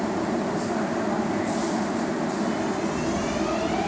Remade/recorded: recorded